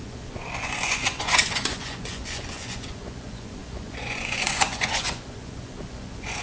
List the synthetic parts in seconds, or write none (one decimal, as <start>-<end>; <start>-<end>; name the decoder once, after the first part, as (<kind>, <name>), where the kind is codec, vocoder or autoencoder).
0.0-6.4 (vocoder, Vocos)

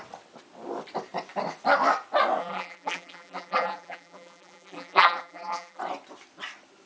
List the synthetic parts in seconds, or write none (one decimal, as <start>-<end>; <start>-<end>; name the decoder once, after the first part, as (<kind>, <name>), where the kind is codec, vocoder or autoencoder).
2.4-5.8 (vocoder, BigVGAN v2)

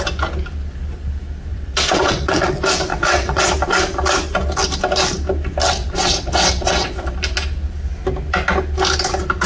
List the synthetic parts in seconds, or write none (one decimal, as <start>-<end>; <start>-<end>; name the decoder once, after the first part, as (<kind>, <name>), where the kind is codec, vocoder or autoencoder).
1.5-2.5 (vocoder, WaveNeXt); 2.9-3.5; 5.8-7.1

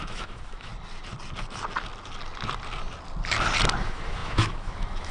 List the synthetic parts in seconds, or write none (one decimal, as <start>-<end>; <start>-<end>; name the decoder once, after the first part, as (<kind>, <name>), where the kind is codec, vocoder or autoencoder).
0.0-0.7 (autoencoder, DAC-VAE); 3.8-5.1

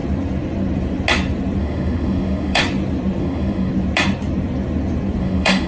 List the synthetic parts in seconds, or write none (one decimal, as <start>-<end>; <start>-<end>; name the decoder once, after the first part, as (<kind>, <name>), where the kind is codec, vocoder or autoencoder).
1.6-2.6 (autoencoder, DAC-VAE); 3.2-3.7; 5.2-5.7

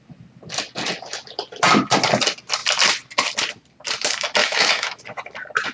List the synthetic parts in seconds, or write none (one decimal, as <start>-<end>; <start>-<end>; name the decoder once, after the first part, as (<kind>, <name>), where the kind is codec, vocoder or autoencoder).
4.4-5.0 (autoencoder, DAC-VAE)

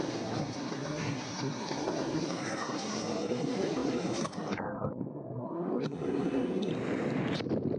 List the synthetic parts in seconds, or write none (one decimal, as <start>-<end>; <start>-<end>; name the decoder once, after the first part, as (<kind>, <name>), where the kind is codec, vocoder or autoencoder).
0.0-6.7 (codec, SNAC)